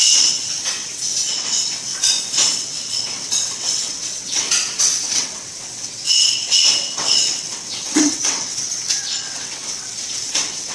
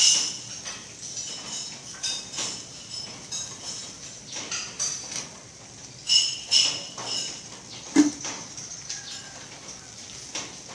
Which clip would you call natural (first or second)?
second